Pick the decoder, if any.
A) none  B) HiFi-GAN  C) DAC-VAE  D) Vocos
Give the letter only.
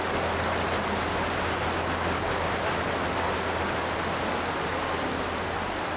A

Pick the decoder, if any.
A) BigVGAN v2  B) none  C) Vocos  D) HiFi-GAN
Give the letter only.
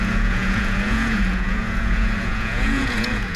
C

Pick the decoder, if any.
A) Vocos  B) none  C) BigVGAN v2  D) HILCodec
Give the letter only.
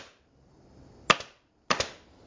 B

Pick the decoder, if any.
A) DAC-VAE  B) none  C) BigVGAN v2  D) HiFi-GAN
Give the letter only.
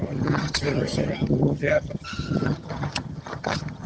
D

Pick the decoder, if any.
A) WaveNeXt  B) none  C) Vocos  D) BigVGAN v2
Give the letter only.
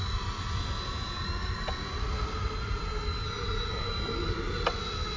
B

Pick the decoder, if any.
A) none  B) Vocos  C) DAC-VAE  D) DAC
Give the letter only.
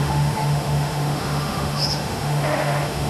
C